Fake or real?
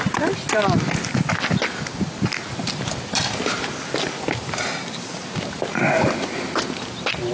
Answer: real